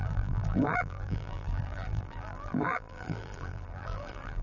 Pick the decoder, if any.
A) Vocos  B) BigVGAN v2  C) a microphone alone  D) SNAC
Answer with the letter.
B